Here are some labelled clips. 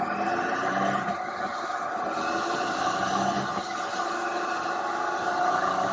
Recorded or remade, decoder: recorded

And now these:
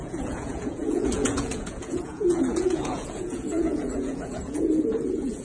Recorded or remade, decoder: remade, vocoder, Vocos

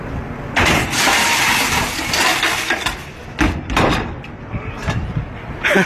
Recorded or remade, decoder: recorded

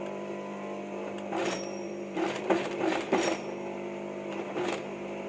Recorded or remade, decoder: remade, vocoder, BigVGAN v2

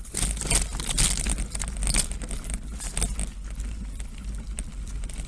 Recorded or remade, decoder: recorded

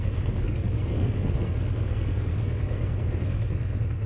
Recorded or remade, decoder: remade, codec, SNAC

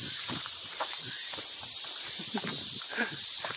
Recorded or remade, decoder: remade, vocoder, BigVGAN v2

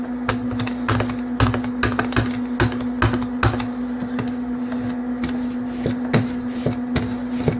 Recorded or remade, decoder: recorded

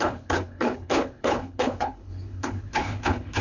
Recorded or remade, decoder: remade, codec, HILCodec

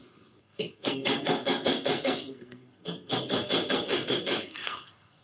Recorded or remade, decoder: remade, codec, SNAC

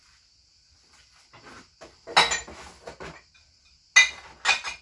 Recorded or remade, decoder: recorded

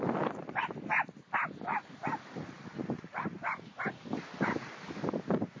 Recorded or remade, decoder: recorded